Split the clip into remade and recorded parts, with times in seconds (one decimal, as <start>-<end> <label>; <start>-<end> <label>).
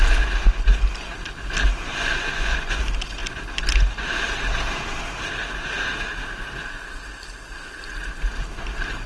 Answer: 0.0-1.8 recorded; 1.8-2.8 remade; 2.8-9.1 recorded